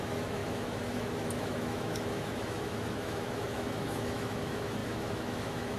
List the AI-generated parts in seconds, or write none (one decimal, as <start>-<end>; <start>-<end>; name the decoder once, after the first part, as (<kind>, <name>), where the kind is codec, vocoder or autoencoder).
0.0-5.8 (autoencoder, DAC-VAE)